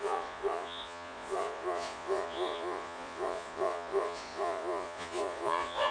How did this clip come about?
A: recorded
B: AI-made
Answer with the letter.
B